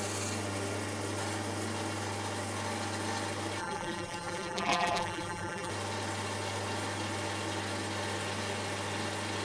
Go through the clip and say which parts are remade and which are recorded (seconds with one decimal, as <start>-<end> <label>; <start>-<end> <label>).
0.0-3.6 recorded; 3.6-5.7 remade; 5.7-9.4 recorded